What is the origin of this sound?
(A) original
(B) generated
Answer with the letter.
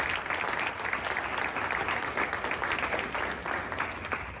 A